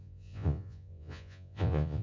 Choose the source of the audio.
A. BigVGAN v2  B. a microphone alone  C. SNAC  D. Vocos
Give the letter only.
D